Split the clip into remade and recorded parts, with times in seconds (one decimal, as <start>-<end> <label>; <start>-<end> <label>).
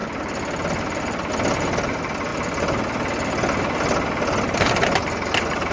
0.0-5.7 recorded